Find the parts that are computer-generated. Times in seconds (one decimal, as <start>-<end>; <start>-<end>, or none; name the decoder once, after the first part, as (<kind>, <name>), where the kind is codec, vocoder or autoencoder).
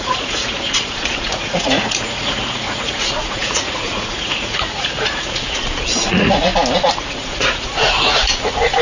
0.0-6.5 (vocoder, Vocos); 7.0-8.8